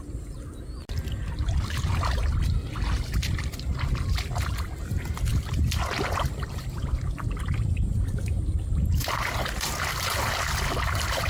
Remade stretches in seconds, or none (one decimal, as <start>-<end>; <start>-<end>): 5.3-9.0